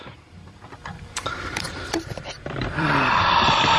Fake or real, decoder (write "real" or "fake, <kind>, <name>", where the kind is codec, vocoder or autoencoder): fake, vocoder, BigVGAN v2